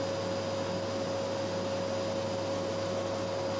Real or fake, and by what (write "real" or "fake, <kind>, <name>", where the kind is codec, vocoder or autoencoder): real